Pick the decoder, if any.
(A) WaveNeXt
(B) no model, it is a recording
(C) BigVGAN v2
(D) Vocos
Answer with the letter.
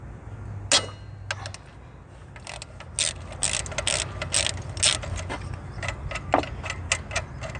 B